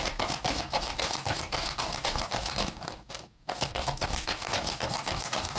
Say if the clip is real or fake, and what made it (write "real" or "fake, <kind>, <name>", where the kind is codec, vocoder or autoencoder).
fake, codec, DAC